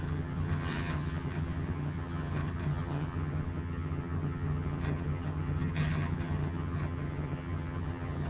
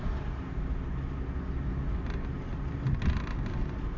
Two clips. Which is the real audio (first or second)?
second